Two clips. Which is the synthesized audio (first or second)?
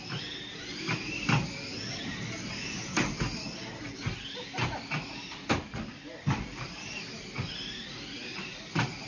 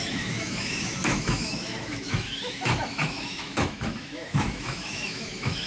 second